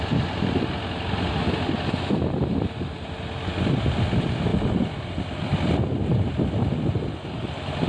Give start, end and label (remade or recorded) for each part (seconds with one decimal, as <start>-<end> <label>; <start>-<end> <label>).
0.0-7.9 recorded